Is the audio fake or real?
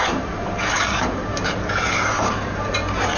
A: fake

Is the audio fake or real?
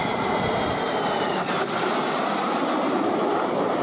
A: fake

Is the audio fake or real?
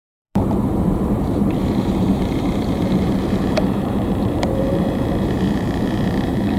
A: fake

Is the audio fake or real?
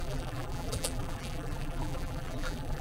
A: fake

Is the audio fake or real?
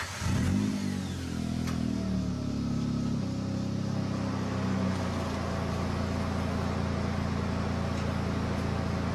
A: real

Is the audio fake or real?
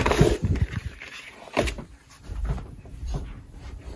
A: fake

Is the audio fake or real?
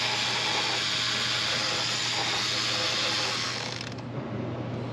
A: real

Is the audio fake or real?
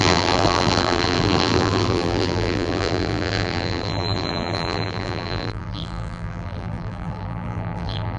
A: fake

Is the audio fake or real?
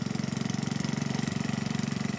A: fake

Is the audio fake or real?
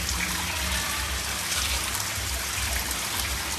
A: real